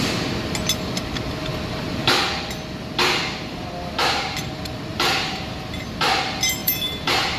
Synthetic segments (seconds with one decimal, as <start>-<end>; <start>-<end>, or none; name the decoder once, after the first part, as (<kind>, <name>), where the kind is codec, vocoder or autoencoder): 1.5-2.0 (vocoder, BigVGAN v2); 4.9-5.6; 6.6-7.4